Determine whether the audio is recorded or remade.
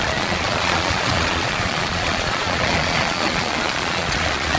remade